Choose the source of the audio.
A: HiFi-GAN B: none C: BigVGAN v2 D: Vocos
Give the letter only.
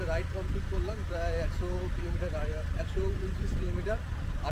B